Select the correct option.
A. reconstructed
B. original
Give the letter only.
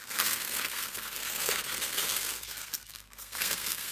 A